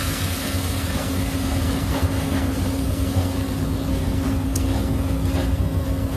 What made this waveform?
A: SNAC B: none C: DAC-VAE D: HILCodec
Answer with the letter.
A